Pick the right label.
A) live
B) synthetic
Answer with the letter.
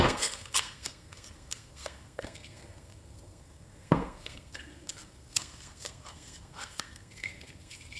B